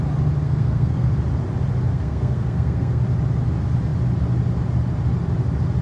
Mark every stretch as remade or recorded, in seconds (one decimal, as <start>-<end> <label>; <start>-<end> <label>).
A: 0.0-0.4 recorded; 0.4-1.1 remade; 1.1-1.9 recorded; 1.9-3.0 remade; 3.0-5.8 recorded